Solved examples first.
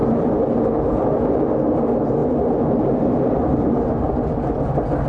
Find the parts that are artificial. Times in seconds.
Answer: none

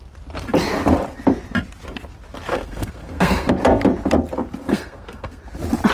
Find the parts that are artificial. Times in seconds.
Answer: 2.5-3.5 (codec, SNAC); 4.7-5.4

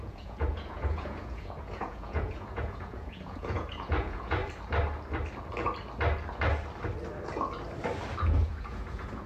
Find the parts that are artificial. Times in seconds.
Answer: 0.0-4.4 (vocoder, Vocos); 8.2-9.3

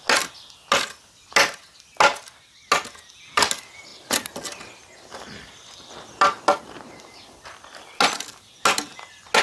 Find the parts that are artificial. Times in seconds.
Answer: none

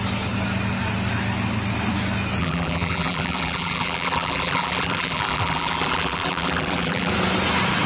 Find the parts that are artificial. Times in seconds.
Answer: 2.4-7.1 (vocoder, BigVGAN v2)

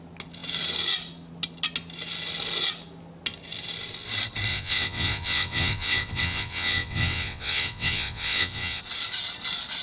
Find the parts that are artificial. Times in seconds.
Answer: 4.5-8.8 (vocoder, WaveNeXt)

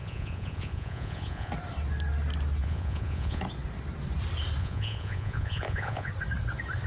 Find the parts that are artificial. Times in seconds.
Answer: 0.0-1.5 (vocoder, Vocos); 2.6-3.4; 4.6-6.1

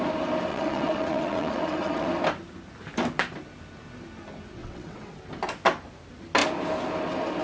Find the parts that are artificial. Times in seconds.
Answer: 0.5-2.1 (vocoder, WaveNeXt); 4.6-5.2